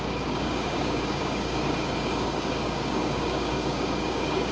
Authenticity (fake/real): fake